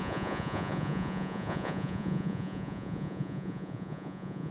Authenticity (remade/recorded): remade